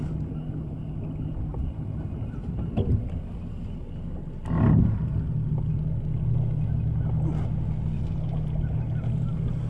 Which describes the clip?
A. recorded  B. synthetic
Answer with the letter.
A